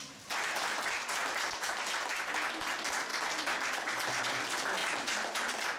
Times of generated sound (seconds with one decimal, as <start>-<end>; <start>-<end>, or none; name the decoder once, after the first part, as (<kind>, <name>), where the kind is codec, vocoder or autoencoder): none